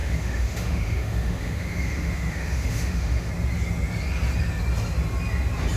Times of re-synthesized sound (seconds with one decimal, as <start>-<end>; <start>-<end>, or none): 0.0-3.3